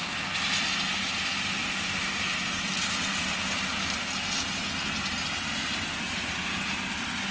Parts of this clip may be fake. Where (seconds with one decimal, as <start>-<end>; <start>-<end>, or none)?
1.6-3.3